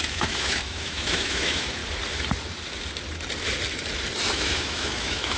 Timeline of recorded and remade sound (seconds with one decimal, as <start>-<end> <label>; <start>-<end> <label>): 0.0-1.8 remade; 1.8-4.3 recorded; 4.3-5.4 remade